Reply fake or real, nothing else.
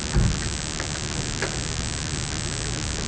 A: real